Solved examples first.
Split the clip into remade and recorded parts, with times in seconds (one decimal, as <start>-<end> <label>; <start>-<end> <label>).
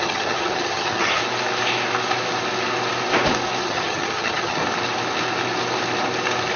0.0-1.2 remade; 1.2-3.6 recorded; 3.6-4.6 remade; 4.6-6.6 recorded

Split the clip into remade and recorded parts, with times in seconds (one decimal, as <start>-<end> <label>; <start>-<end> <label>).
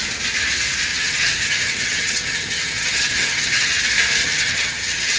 0.0-0.9 recorded; 0.9-3.8 remade; 3.8-4.2 recorded; 4.2-5.2 remade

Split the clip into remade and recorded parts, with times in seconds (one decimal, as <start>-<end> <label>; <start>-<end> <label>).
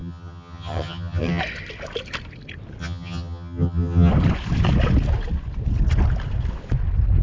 0.0-1.4 remade; 1.4-2.8 recorded; 2.8-4.1 remade; 4.1-7.2 recorded